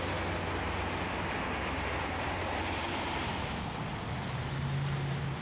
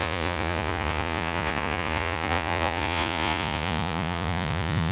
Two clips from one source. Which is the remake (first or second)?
second